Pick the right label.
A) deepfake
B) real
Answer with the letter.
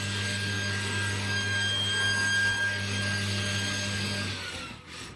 A